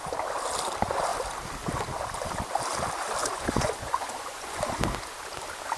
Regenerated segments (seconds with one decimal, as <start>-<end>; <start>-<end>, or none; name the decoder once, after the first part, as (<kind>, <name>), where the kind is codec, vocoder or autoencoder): 3.2-4.6 (vocoder, Vocos)